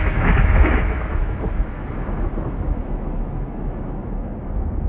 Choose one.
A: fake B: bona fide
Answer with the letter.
A